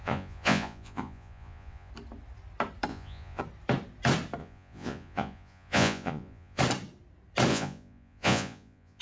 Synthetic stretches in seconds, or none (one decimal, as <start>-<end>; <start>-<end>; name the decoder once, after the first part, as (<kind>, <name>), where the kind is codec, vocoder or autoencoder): 0.0-1.9 (vocoder, Vocos); 2.9-3.4; 4.4-6.6; 7.5-9.0